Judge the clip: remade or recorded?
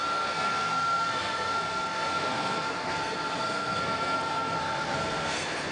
remade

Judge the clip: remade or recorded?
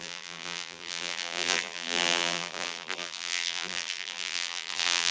remade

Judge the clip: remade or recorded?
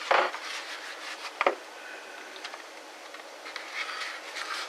recorded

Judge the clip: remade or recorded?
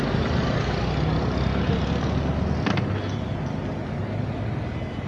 recorded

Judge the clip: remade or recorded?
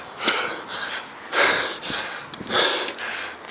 recorded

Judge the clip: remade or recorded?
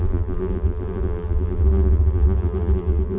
remade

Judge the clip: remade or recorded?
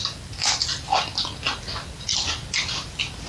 recorded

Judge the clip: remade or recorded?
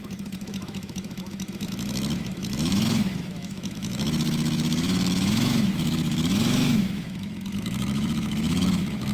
remade